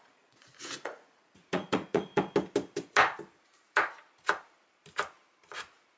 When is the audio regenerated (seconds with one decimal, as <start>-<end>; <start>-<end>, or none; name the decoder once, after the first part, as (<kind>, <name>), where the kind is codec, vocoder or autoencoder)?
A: 0.0-2.1 (vocoder, Vocos)

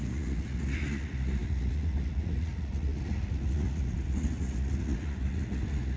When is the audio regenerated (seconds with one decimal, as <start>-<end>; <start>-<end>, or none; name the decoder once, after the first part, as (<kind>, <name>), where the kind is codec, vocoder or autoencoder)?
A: 0.0-6.0 (vocoder, Vocos)

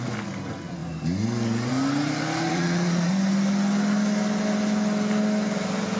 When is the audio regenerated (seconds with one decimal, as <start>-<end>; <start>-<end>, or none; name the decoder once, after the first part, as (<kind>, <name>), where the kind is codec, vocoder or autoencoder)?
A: 2.5-3.1 (vocoder, Vocos)

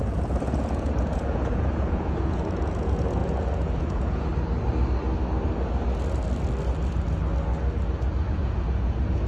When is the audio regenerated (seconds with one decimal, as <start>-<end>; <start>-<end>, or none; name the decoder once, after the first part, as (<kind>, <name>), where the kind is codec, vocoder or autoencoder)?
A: 0.0-4.3 (vocoder, Vocos); 8.3-9.3

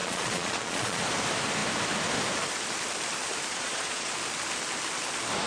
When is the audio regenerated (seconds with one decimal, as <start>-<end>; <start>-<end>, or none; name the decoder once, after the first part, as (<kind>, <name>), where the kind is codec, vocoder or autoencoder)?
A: 0.0-1.0 (vocoder, Vocos); 3.5-4.1

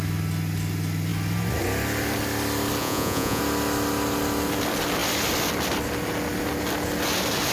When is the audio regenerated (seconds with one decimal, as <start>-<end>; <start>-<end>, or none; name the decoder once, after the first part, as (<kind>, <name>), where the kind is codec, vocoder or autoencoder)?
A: 2.8-3.4 (vocoder, Vocos)